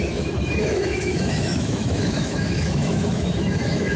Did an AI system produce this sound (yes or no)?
yes